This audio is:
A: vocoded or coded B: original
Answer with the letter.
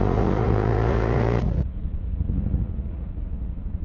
A